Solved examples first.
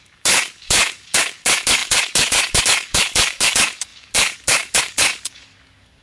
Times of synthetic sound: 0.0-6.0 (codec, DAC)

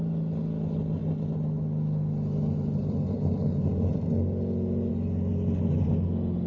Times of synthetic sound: none

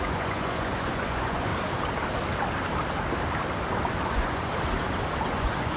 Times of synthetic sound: 0.0-1.5 (vocoder, Vocos); 4.1-4.5; 5.3-5.8

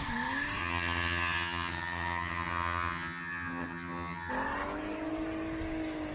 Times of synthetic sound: 0.6-4.3 (vocoder, HiFi-GAN)

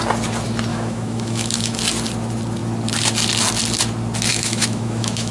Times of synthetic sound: 0.7-1.8 (autoencoder, DAC-VAE); 4.3-5.3

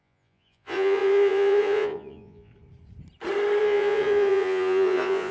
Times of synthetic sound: 0.0-2.5 (vocoder, Vocos); 3.6-5.3

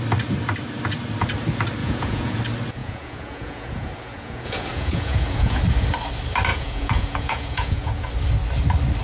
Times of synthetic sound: 1.8-2.4 (vocoder, Vocos); 2.8-5.6; 6.5-8.1